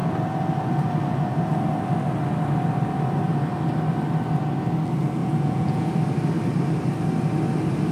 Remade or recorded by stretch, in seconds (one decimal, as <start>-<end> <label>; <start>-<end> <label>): 0.0-5.2 recorded; 5.2-5.9 remade; 5.9-7.9 recorded